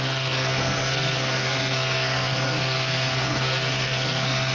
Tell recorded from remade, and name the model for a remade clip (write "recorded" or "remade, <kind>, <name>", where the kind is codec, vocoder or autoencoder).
remade, codec, SNAC